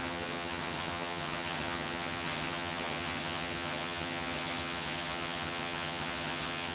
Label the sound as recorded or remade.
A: remade